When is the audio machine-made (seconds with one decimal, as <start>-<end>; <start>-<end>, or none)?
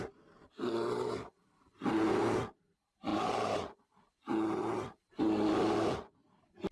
3.1-5.2